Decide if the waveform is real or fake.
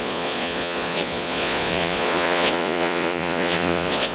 fake